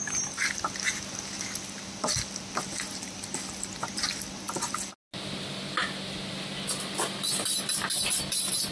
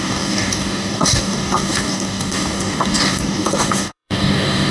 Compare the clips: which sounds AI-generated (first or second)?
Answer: second